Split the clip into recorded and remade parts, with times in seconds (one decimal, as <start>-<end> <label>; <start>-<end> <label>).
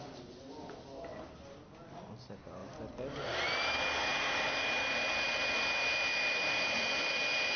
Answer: 0.0-7.6 recorded